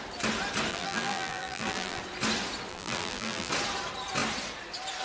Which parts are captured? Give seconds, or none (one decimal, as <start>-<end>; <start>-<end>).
0.0-0.7; 2.0-2.7; 3.5-5.0